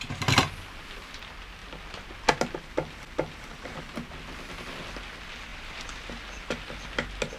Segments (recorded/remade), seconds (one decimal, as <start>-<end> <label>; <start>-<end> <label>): 0.0-5.5 recorded; 5.5-6.2 remade; 6.2-7.4 recorded

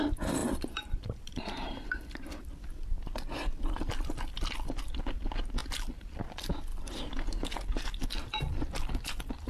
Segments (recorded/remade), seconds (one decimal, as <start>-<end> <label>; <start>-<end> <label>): 0.0-0.4 recorded; 0.4-2.5 remade; 2.5-9.5 recorded

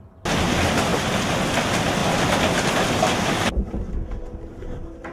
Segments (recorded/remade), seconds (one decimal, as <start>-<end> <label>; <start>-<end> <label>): 0.0-5.1 recorded

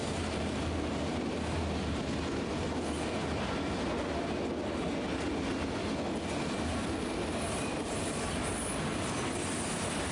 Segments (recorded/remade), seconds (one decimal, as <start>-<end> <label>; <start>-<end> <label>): 0.0-2.0 remade; 2.0-10.1 recorded